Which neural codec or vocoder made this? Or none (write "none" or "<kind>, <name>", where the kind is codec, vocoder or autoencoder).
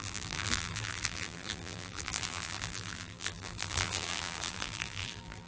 vocoder, BigVGAN v2